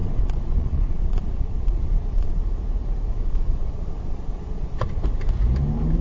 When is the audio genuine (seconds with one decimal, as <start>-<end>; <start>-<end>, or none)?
2.4-3.1; 5.0-6.0

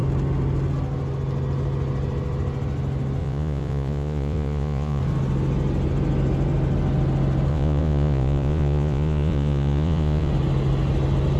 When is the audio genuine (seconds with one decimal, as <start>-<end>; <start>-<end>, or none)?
0.0-3.2; 5.0-7.5; 10.3-11.4

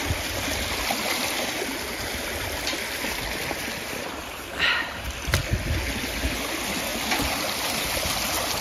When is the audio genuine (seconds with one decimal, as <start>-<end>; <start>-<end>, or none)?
0.0-8.6

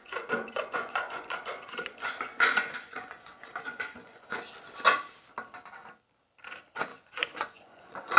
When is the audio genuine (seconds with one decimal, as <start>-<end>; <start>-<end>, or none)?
4.4-6.9